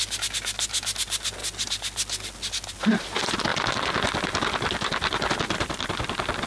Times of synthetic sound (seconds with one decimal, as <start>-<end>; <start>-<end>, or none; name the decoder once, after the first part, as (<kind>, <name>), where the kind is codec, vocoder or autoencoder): none